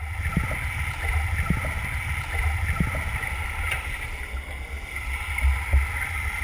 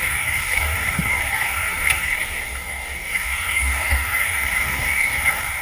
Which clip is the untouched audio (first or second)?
first